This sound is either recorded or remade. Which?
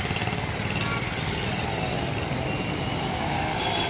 recorded